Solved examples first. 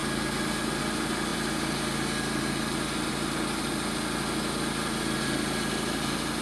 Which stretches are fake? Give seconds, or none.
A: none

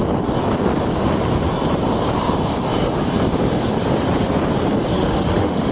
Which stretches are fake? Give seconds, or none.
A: 4.9-5.7